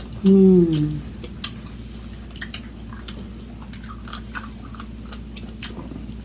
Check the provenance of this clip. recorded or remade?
recorded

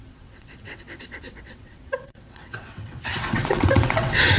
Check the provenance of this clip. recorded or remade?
remade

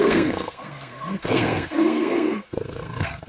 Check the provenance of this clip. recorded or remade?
remade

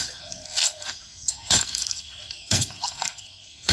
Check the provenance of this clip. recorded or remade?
remade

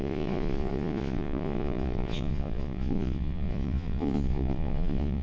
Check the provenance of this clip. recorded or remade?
remade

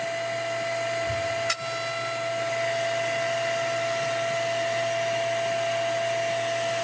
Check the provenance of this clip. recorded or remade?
recorded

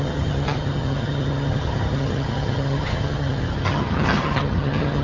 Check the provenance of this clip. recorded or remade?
remade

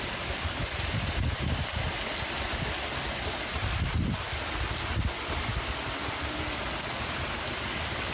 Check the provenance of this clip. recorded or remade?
recorded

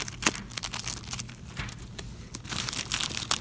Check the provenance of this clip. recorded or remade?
recorded